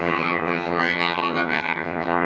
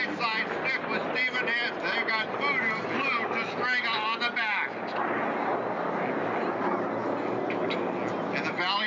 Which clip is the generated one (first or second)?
first